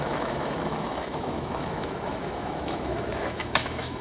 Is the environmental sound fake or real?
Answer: fake